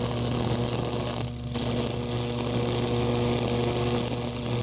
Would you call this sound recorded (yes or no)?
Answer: yes